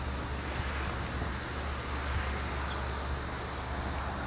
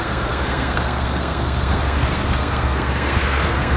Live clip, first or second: first